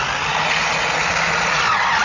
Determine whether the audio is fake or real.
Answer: real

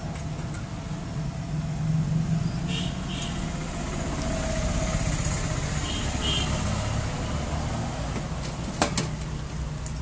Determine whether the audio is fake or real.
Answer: real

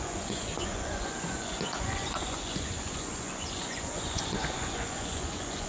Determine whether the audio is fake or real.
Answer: fake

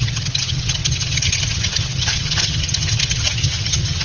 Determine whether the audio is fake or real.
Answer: fake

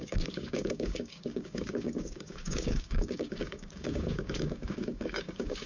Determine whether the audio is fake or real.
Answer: fake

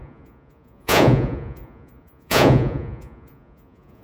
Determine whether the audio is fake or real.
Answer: fake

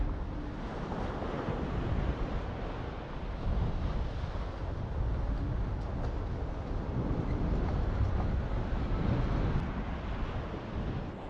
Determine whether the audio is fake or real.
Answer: real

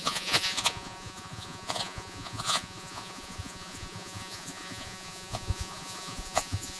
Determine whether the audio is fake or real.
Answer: fake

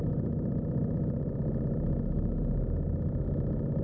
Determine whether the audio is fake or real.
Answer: real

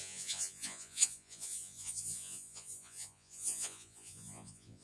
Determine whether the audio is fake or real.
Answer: fake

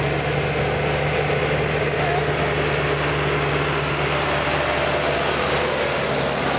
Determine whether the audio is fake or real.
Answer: real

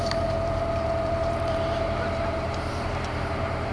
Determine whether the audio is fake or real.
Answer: fake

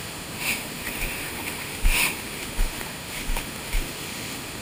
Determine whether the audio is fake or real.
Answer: fake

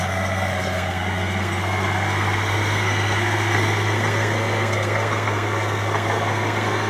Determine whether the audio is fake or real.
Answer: fake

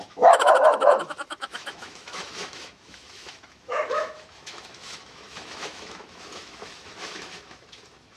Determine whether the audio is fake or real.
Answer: fake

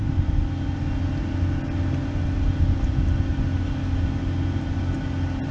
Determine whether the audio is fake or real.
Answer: real